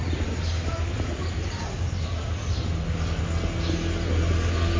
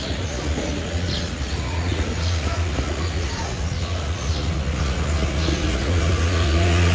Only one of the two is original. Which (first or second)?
first